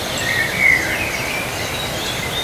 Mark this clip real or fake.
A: real